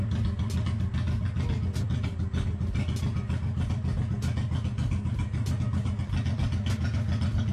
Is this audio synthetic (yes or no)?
no